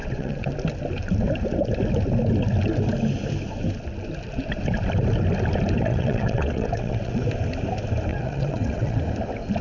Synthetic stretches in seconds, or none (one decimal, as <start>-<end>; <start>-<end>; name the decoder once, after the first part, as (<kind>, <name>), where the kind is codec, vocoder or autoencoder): 0.0-0.5 (vocoder, WaveNeXt); 5.8-7.2; 8.1-9.0